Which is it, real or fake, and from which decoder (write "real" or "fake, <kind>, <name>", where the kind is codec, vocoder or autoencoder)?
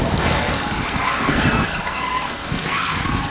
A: fake, codec, SNAC